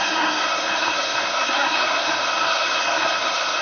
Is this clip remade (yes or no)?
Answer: yes